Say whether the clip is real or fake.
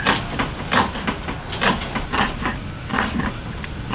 real